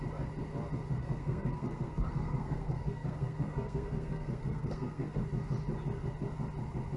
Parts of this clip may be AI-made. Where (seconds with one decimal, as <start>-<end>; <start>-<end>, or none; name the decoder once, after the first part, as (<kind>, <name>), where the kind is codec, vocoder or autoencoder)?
1.0-5.2 (codec, SNAC)